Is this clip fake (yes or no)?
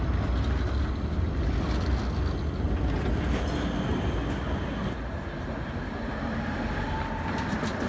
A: no